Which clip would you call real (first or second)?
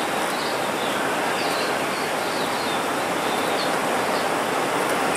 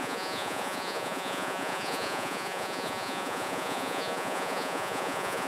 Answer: first